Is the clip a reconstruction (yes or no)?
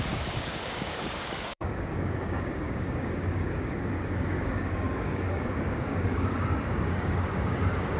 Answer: yes